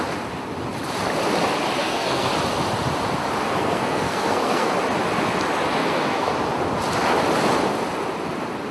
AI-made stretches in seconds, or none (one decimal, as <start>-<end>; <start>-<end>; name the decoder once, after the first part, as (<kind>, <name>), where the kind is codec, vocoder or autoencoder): 1.8-2.3 (codec, SNAC); 3.4-4.7; 5.8-6.3